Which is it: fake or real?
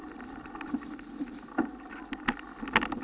real